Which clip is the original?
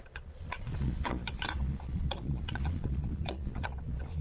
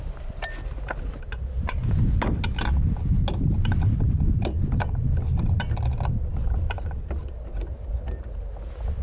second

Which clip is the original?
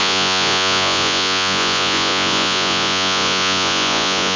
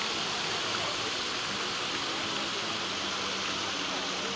second